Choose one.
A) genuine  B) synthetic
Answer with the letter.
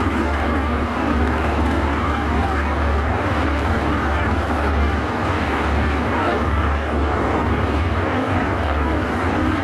B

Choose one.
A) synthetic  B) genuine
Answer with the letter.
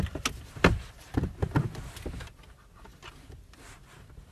B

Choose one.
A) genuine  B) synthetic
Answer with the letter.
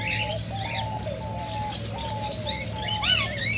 A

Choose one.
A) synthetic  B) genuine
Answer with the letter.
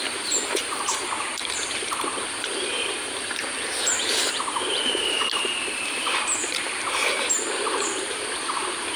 A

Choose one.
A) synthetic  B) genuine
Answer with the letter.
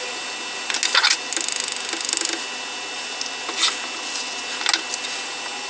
B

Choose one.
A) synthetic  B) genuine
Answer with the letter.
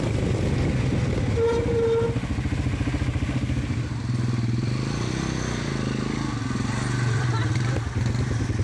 B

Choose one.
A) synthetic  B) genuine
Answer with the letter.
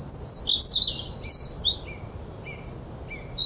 B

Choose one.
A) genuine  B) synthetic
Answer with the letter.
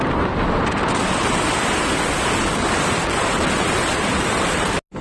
A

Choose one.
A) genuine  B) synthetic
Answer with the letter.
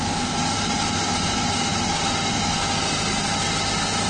A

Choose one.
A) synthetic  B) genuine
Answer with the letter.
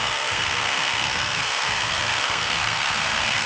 A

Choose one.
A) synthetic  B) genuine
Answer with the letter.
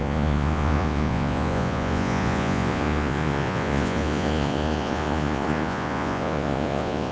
A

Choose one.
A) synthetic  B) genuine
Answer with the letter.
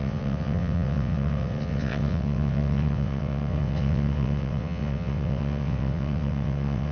A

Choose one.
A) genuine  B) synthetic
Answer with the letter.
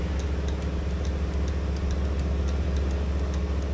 A